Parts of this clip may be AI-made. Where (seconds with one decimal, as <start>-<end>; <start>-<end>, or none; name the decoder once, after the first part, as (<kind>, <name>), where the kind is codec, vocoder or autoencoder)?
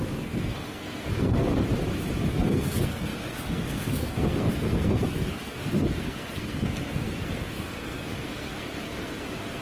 0.0-1.5 (codec, SNAC); 2.3-9.6